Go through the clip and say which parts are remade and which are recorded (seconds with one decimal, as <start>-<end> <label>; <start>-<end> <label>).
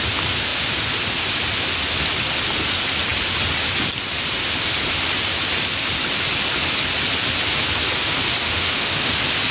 0.0-8.4 recorded; 8.4-9.1 remade; 9.1-9.5 recorded